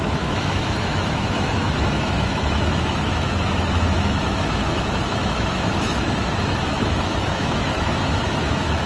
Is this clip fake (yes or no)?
yes